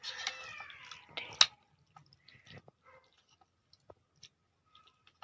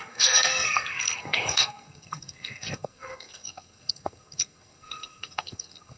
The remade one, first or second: second